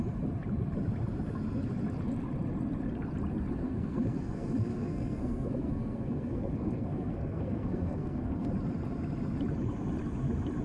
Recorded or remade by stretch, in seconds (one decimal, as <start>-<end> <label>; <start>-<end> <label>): 0.0-3.6 recorded; 3.6-8.5 remade; 8.5-10.6 recorded